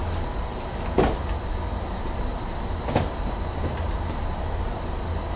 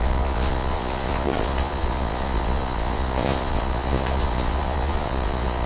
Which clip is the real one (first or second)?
first